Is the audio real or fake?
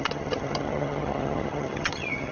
fake